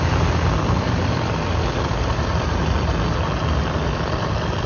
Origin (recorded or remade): recorded